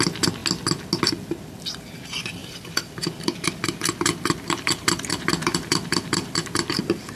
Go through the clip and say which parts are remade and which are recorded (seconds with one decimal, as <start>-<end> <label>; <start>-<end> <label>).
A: 0.0-2.4 recorded; 2.4-6.7 remade; 6.7-7.2 recorded